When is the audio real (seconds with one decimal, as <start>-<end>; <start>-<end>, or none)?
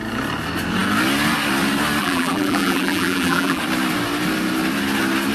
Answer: 0.0-2.0; 3.6-5.3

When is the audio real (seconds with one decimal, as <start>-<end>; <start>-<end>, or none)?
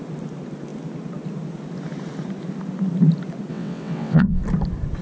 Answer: 0.0-3.5; 4.4-5.0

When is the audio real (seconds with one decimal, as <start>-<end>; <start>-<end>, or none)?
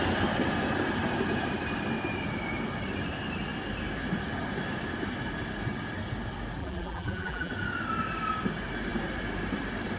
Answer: 0.0-6.6; 7.5-10.0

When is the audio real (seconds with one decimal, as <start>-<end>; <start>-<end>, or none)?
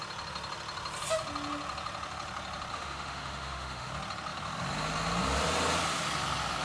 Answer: 0.0-2.7; 3.9-6.6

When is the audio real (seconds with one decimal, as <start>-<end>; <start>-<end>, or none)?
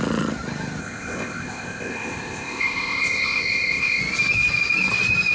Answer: 0.0-0.8; 4.0-5.3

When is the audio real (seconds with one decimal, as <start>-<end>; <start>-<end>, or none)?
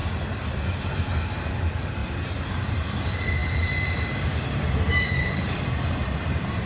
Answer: 0.0-0.9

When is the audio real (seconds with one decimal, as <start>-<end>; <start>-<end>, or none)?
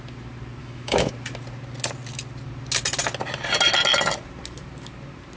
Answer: 0.0-0.6; 1.1-5.4